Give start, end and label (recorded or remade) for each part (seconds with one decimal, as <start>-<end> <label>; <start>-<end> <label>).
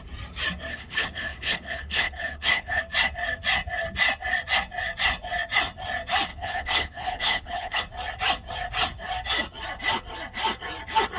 0.0-0.7 recorded; 0.7-2.8 remade; 2.8-6.3 recorded; 6.3-7.8 remade; 7.8-11.2 recorded